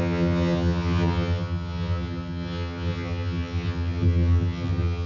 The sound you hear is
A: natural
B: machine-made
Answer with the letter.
B